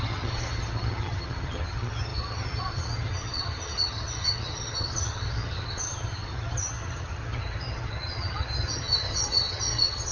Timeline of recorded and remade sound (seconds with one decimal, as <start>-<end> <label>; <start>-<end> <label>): 0.0-10.1 remade